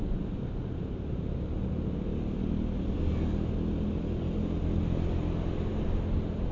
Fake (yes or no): no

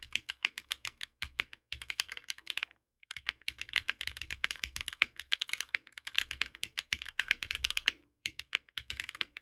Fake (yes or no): yes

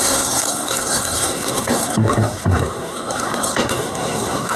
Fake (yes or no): yes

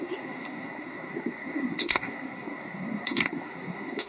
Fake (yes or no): yes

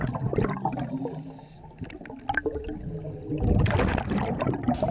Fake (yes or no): no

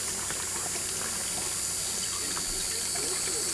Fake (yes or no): no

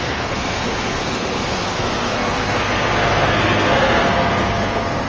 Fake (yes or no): yes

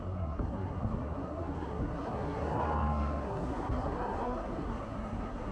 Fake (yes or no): yes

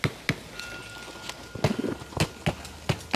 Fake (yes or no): no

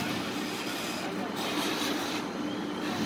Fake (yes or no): no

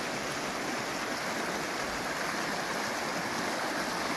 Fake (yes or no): no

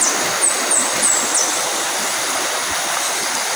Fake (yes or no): no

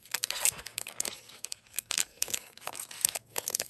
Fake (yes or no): yes